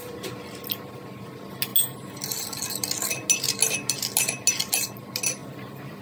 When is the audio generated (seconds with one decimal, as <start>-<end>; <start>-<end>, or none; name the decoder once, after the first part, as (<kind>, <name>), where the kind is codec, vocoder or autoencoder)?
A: 5.4-6.0 (vocoder, BigVGAN v2)